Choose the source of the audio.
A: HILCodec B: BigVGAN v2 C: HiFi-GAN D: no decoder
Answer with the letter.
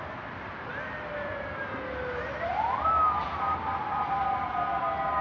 D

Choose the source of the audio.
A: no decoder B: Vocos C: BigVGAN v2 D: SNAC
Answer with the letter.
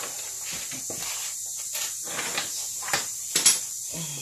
A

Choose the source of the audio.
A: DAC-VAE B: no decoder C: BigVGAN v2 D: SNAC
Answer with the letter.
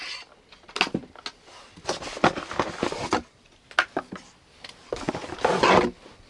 B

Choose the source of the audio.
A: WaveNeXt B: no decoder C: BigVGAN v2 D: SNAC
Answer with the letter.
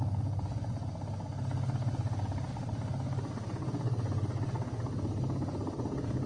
B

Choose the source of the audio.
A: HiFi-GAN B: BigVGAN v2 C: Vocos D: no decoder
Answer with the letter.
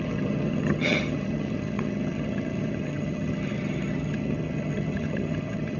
A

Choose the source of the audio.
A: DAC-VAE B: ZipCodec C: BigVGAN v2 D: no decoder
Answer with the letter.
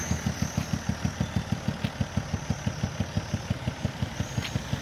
D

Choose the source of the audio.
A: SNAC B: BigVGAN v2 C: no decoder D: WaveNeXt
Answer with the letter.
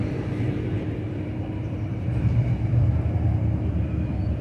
B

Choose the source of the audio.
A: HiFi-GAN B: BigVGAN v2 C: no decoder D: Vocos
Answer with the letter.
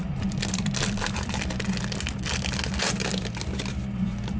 C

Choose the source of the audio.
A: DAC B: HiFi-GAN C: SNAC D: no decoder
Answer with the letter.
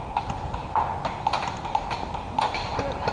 D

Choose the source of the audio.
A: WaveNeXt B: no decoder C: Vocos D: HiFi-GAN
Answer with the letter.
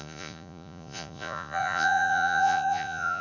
C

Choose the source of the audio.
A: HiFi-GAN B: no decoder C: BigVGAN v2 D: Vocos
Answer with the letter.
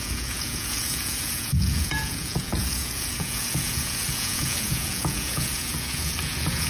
D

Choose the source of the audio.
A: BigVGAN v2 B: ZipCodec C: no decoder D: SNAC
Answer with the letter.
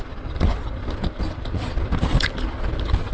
A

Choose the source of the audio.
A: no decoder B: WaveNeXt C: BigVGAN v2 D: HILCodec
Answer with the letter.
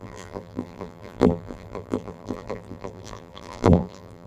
C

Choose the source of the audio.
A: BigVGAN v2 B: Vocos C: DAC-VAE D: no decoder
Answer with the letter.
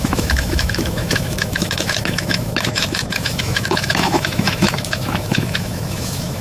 C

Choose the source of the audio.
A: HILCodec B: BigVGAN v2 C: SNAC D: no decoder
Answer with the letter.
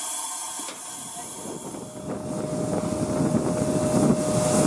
D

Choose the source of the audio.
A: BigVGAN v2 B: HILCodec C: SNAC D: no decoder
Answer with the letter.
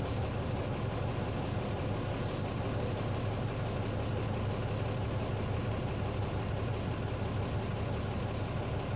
D